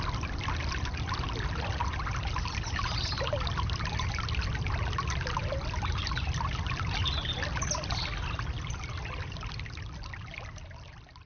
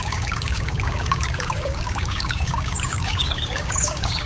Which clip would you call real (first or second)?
first